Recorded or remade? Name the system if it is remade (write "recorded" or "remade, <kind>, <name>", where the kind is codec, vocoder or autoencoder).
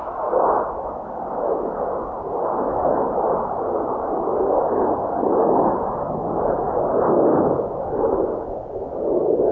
recorded